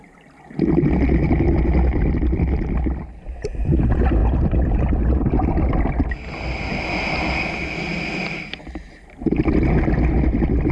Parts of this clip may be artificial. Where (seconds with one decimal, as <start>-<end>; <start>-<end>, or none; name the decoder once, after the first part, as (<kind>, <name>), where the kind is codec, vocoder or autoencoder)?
none